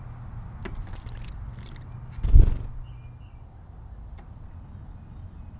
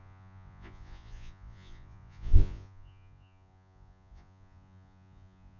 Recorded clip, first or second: first